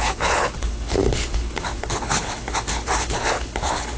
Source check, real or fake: fake